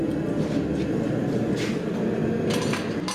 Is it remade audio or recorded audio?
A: recorded